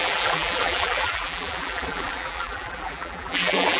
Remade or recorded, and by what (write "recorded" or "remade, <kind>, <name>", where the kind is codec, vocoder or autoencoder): remade, vocoder, BigVGAN v2